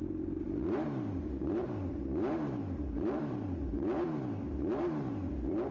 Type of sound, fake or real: fake